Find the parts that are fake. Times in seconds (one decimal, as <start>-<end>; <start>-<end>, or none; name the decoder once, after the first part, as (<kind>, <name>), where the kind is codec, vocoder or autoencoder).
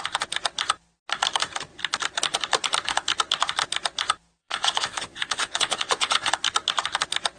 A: 4.4-6.3 (vocoder, Vocos)